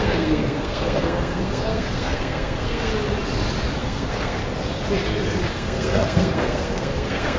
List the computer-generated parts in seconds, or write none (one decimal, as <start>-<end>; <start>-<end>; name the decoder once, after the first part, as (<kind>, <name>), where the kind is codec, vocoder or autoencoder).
0.0-2.9 (codec, SNAC); 3.8-4.4; 5.5-7.4